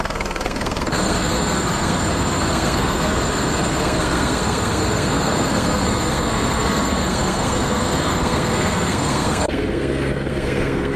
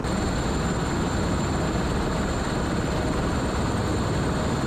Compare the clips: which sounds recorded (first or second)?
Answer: second